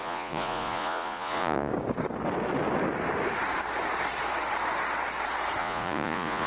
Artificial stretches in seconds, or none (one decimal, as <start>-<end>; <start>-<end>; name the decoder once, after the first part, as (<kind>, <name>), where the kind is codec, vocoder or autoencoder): 0.0-1.7 (vocoder, Vocos); 5.6-6.5